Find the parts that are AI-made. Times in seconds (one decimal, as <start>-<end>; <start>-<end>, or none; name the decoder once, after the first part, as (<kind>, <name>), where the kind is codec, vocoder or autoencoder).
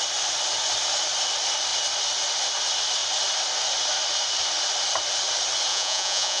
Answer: 5.7-6.4 (vocoder, Vocos)